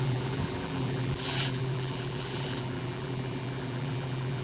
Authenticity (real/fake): fake